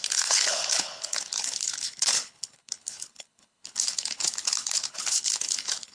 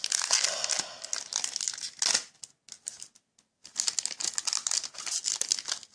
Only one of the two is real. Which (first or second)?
second